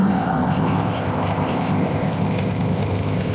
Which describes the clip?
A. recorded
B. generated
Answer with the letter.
B